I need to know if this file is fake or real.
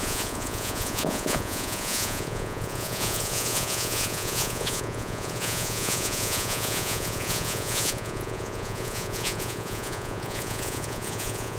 fake